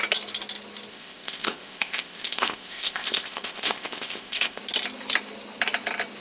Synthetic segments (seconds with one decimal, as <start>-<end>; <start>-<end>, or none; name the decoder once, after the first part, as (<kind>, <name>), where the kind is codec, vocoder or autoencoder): 0.9-4.6 (codec, ZipCodec)